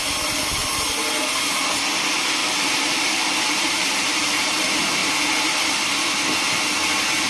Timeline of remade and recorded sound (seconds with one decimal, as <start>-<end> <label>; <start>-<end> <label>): 0.0-2.4 recorded; 2.4-4.6 remade; 4.6-5.0 recorded; 5.0-5.6 remade; 5.6-7.3 recorded

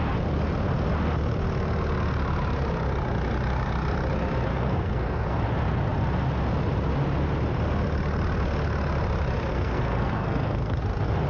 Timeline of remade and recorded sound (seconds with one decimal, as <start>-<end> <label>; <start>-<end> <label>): 0.0-4.5 recorded; 4.5-5.4 remade; 5.4-9.5 recorded; 9.5-10.8 remade; 10.8-11.3 recorded

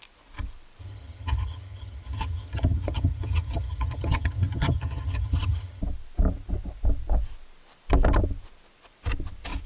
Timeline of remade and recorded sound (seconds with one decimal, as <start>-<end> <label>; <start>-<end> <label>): 0.0-0.8 recorded; 0.8-5.8 remade; 5.8-9.7 recorded